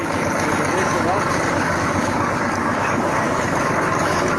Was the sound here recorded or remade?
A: remade